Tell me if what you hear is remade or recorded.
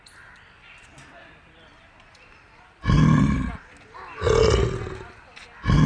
recorded